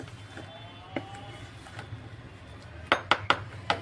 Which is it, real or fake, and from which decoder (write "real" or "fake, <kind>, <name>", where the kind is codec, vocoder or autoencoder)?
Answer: real